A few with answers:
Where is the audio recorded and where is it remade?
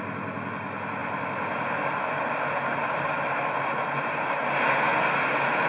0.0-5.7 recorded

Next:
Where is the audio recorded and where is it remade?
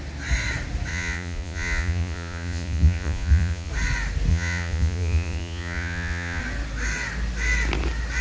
0.0-0.9 recorded; 0.9-3.7 remade; 3.7-4.3 recorded; 4.3-6.4 remade; 6.4-8.2 recorded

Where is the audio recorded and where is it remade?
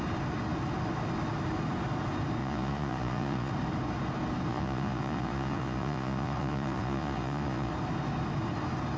0.0-2.4 recorded; 2.4-3.5 remade; 3.5-4.5 recorded; 4.5-7.7 remade; 7.7-9.0 recorded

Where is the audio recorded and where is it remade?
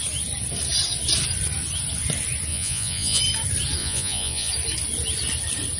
0.0-2.5 recorded; 2.5-3.2 remade; 3.2-3.8 recorded; 3.8-4.5 remade; 4.5-5.8 recorded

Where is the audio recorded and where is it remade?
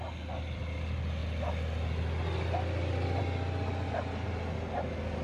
0.0-5.2 recorded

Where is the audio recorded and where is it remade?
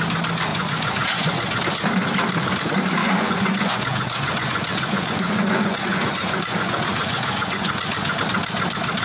0.0-0.5 recorded; 0.5-1.6 remade; 1.6-3.0 recorded; 3.0-8.2 remade; 8.2-9.0 recorded